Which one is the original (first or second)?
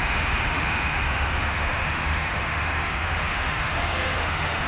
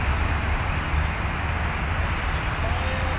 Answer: second